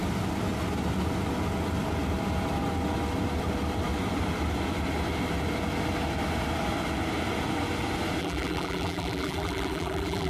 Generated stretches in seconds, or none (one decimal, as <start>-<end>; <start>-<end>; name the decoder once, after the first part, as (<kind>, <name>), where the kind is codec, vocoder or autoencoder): 8.2-10.3 (vocoder, BigVGAN v2)